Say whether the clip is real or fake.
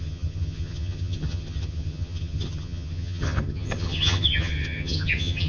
fake